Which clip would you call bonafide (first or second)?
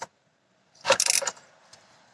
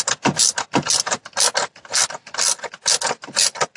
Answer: second